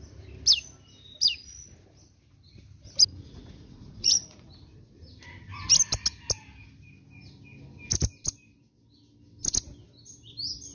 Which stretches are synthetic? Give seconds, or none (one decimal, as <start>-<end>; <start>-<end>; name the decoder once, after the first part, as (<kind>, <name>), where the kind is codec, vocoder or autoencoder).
3.1-4.5 (vocoder, Vocos)